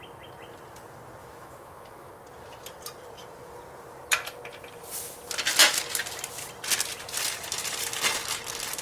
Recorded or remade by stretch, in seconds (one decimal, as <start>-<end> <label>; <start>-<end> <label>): 0.0-1.2 recorded; 1.2-2.1 remade; 2.1-8.8 recorded